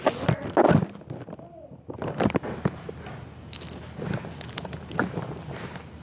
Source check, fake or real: real